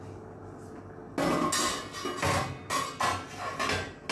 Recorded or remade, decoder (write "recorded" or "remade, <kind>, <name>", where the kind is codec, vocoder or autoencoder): recorded